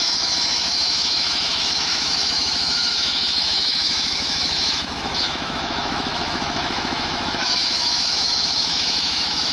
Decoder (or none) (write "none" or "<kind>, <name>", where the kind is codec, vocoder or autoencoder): autoencoder, DAC-VAE